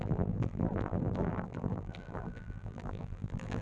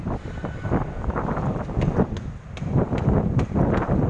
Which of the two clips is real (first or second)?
second